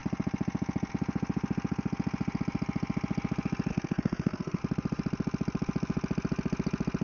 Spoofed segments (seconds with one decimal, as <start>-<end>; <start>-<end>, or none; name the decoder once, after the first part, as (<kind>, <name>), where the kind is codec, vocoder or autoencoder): 3.7-4.6 (codec, SNAC)